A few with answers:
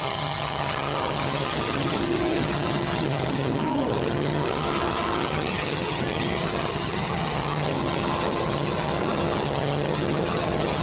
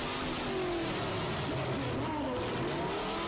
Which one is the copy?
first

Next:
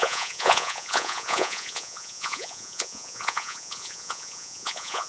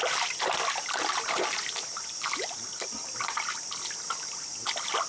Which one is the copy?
first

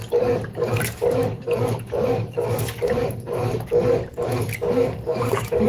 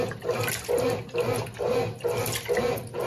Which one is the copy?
first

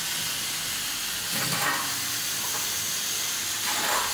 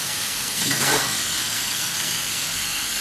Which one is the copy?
second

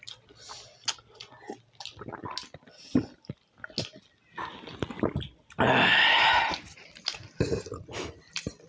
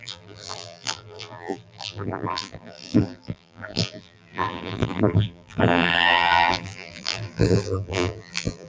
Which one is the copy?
second